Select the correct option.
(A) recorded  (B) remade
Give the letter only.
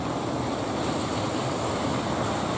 A